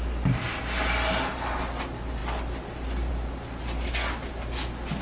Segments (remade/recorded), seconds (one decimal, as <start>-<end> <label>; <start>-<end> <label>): 0.0-5.0 recorded